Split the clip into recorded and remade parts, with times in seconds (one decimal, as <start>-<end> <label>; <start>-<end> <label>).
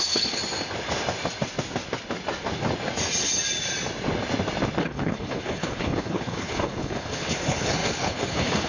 0.0-0.4 remade; 0.4-4.8 recorded; 4.8-8.7 remade